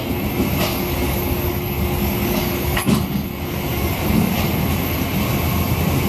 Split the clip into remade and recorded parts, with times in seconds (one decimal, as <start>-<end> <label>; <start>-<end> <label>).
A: 0.0-0.7 recorded; 0.7-4.4 remade; 4.4-6.1 recorded